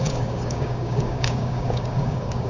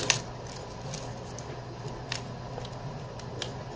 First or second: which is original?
second